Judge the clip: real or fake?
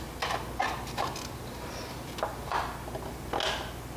real